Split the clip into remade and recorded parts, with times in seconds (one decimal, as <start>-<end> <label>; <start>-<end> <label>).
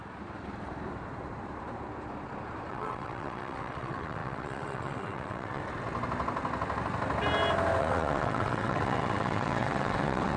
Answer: 0.0-2.7 recorded; 2.7-5.6 remade; 5.6-7.8 recorded; 7.8-10.4 remade